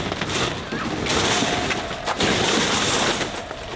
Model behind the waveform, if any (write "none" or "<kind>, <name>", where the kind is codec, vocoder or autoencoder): none